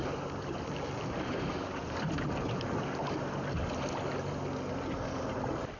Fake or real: real